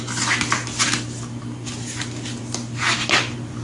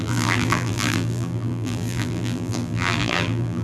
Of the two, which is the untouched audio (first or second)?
first